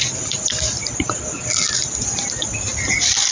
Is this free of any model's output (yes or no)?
yes